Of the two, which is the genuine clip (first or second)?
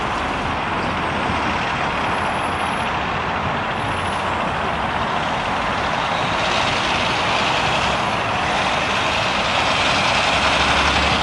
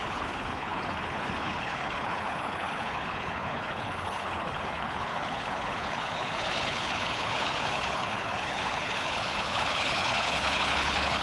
first